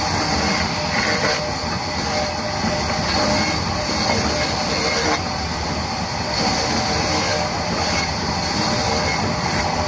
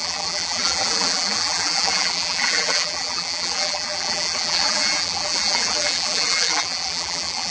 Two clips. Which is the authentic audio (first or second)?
first